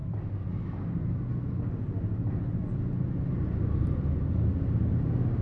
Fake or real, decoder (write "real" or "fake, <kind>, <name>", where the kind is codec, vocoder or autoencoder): real